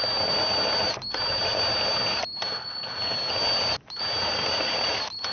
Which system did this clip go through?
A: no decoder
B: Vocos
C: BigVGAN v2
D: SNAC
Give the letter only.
A